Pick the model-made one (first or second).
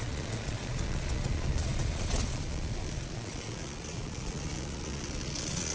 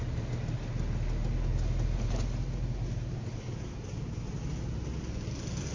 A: first